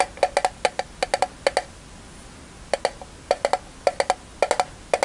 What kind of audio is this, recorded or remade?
recorded